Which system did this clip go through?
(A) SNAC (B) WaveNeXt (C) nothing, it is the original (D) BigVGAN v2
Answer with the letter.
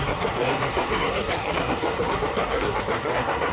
A